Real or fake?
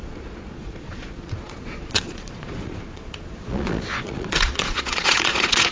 fake